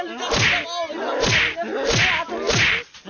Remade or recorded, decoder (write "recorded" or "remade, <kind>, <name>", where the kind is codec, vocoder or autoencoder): recorded